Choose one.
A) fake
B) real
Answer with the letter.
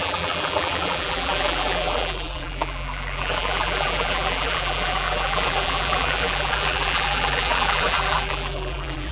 A